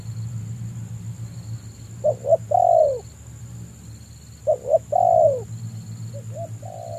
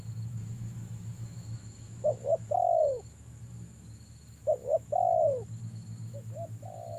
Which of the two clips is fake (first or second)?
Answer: second